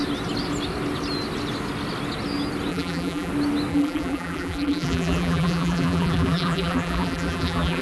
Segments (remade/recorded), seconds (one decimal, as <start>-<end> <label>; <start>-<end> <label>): 0.0-2.7 recorded; 2.7-3.3 remade; 3.3-3.7 recorded; 3.7-7.8 remade